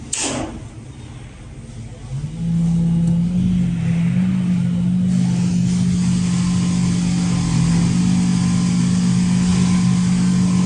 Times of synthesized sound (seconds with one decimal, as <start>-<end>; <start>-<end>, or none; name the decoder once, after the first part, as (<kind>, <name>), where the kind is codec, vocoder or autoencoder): none